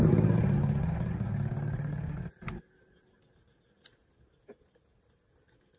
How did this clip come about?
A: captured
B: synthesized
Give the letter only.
A